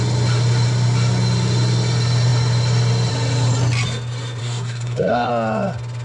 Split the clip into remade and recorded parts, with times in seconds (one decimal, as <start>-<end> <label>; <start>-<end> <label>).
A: 0.0-4.4 recorded; 4.4-5.3 remade; 5.3-6.0 recorded